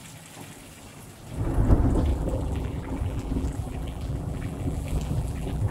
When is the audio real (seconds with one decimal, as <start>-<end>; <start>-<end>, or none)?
0.0-2.1